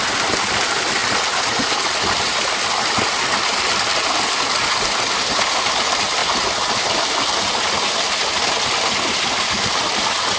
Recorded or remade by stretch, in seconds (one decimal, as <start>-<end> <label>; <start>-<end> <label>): 0.0-10.4 recorded